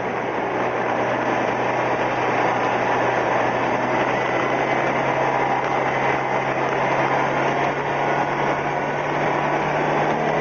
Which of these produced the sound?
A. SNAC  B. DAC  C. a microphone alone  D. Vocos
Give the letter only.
C